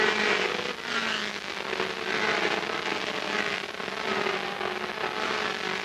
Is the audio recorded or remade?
recorded